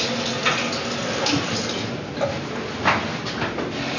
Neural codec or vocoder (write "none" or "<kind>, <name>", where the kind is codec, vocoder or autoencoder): none